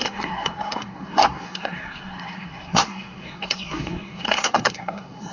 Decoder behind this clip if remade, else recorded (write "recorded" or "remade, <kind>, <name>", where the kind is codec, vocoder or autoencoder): remade, codec, SNAC